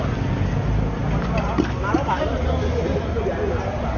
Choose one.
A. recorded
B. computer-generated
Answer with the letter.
A